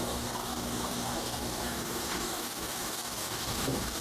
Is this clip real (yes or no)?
no